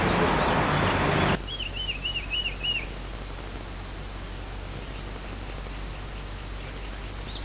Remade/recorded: recorded